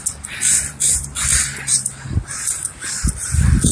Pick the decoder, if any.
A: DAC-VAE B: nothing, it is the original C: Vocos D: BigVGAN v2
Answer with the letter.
D